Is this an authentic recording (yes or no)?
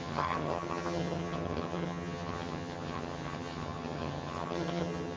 no